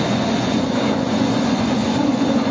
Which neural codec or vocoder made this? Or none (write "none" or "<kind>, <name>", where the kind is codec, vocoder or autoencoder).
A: vocoder, Vocos